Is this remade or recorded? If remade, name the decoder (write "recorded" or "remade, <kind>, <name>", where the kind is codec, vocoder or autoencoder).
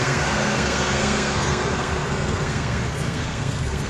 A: remade, codec, SNAC